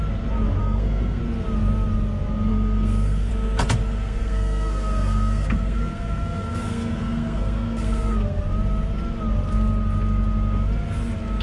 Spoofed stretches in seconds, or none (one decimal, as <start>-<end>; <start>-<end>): 0.6-1.2; 2.5-3.3; 3.8-8.4